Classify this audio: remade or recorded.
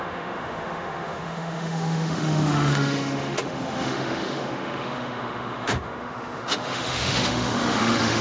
remade